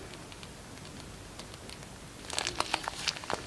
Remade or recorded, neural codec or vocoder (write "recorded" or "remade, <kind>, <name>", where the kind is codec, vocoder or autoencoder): recorded